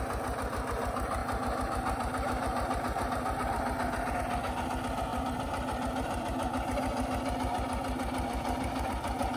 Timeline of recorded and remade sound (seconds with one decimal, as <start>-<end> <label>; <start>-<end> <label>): 0.0-9.4 recorded